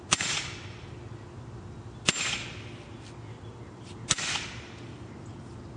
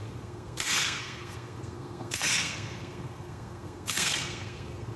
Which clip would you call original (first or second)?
first